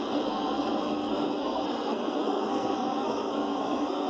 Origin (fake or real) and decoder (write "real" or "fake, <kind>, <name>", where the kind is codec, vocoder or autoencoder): fake, codec, SNAC